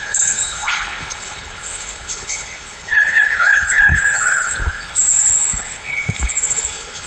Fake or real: fake